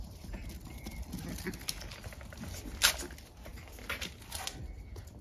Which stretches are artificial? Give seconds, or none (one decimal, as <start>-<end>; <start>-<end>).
none